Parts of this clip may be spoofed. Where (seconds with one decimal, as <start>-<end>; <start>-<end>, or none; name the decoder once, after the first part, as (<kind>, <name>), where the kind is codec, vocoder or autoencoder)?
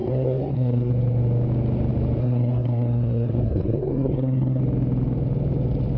0.0-0.9 (codec, SNAC); 2.2-4.6